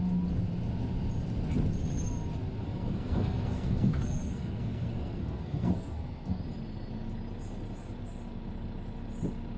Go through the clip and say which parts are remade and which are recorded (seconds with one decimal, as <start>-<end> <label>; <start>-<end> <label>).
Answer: 0.0-2.6 recorded; 2.6-6.4 remade; 6.4-9.6 recorded